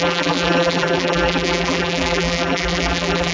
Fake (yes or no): yes